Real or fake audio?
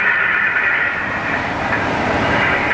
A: fake